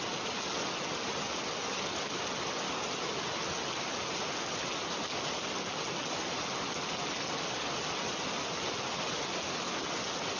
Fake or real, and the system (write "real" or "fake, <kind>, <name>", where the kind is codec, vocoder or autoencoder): real